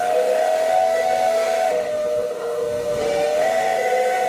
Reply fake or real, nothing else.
fake